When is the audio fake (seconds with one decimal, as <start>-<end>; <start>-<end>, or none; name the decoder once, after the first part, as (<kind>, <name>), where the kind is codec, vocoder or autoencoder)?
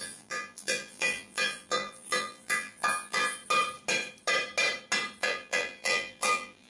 0.0-3.4 (vocoder, BigVGAN v2); 5.2-6.7